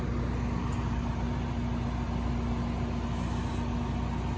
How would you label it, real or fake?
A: real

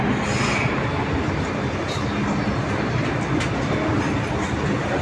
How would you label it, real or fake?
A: real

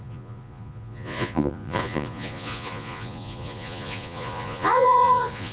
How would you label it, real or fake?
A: fake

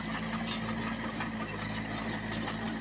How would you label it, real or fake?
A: real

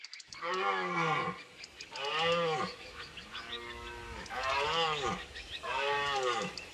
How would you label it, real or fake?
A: fake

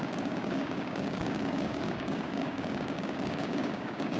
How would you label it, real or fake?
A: fake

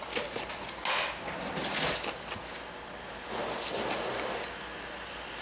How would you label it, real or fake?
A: real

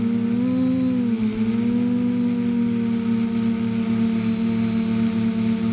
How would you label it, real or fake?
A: real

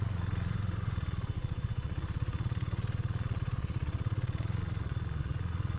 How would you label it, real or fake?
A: fake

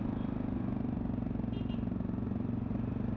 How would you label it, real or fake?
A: real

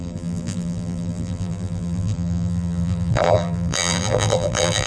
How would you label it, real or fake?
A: fake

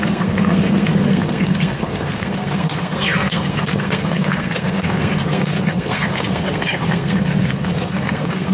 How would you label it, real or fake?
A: fake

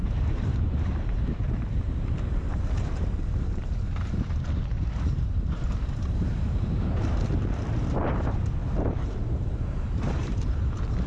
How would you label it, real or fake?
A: fake